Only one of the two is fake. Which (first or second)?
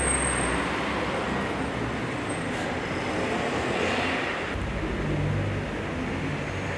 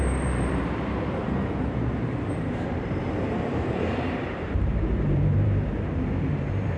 second